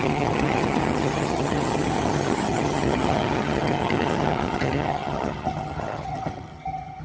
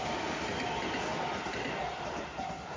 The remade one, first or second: first